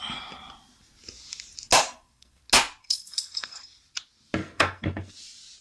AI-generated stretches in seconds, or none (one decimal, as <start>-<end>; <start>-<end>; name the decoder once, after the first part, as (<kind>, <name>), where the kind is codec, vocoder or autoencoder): 1.8-2.4 (codec, SNAC); 2.8-3.6; 4.4-5.1